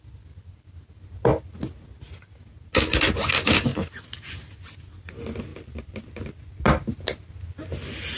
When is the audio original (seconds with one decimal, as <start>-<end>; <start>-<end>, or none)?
0.0-8.2